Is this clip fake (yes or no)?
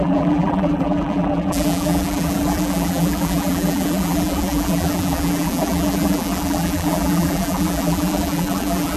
yes